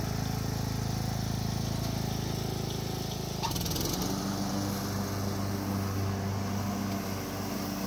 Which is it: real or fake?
real